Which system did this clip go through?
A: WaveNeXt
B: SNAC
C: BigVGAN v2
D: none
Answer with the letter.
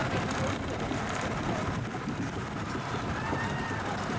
C